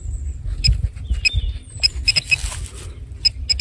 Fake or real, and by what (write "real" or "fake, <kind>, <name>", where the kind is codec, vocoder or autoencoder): real